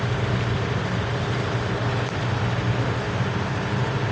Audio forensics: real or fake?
real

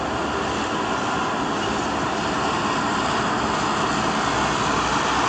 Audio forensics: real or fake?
real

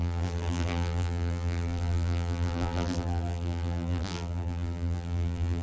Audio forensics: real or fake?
fake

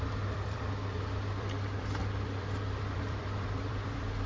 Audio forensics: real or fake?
fake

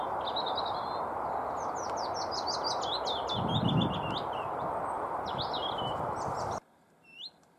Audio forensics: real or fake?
real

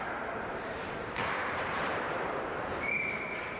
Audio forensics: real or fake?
fake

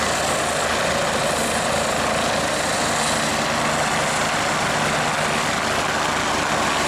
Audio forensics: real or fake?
real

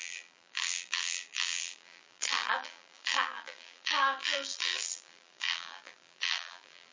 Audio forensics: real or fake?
fake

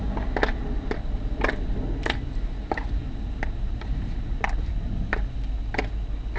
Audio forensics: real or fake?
real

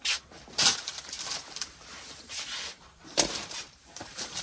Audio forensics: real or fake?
fake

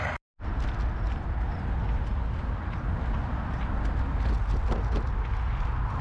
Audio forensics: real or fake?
real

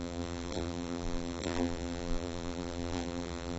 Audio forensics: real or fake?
fake